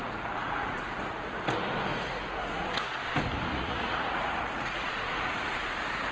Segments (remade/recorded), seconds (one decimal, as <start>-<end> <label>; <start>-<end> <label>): 0.0-1.4 remade; 1.4-1.9 recorded; 1.9-3.0 remade; 3.0-3.5 recorded; 3.5-6.1 remade